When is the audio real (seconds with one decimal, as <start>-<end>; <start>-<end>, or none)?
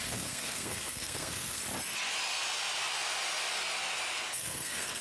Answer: 1.6-4.3